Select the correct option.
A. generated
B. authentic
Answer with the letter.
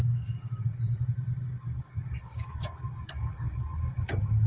A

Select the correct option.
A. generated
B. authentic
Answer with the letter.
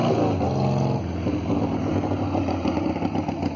B